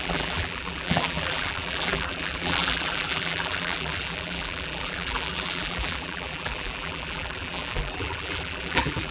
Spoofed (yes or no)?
yes